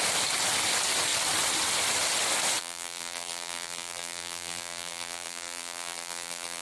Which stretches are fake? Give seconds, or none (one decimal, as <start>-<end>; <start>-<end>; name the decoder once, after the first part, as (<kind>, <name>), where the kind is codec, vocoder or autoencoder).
2.6-6.6 (vocoder, BigVGAN v2)